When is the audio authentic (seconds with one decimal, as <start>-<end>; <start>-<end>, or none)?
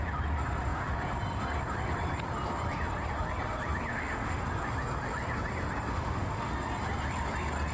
0.0-3.9; 4.4-5.9; 6.5-7.7